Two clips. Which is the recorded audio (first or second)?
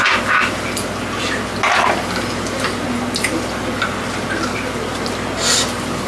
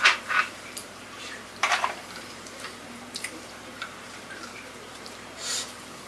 first